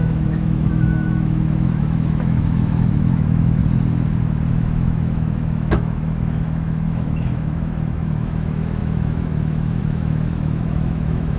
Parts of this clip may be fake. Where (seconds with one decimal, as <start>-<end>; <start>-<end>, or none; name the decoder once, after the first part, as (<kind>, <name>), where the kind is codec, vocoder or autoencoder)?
0.0-3.6 (autoencoder, DAC-VAE); 4.5-11.4